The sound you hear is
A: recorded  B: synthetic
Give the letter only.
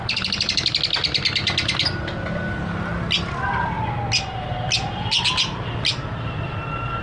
A